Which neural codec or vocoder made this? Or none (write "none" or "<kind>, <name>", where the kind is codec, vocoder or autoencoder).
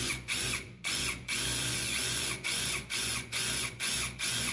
vocoder, Vocos